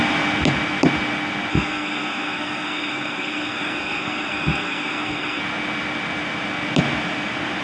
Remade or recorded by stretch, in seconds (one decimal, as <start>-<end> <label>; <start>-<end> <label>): 0.0-1.5 recorded; 1.5-5.4 remade; 5.4-7.6 recorded